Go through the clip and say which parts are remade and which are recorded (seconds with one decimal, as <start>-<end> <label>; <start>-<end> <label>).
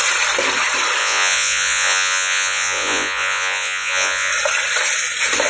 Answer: 0.0-1.0 recorded; 1.0-4.3 remade; 4.3-5.5 recorded